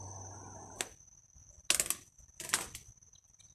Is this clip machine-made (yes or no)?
no